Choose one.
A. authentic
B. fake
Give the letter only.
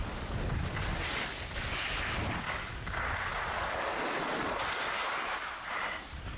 A